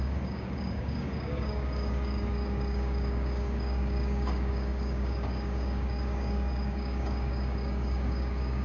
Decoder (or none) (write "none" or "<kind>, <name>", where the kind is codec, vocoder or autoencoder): codec, DAC